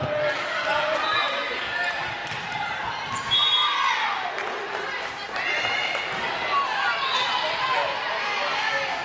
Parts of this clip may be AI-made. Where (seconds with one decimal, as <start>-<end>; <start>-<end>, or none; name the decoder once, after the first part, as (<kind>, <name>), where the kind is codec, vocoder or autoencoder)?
none